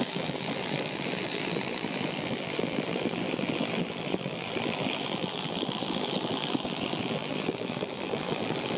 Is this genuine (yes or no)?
no